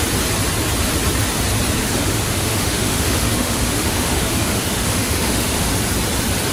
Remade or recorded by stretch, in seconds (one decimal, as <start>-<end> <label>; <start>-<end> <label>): 0.0-1.8 recorded; 1.8-5.7 remade; 5.7-6.5 recorded